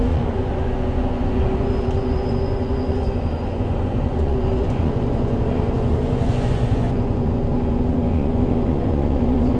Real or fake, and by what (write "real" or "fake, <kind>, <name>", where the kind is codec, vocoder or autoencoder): fake, vocoder, Vocos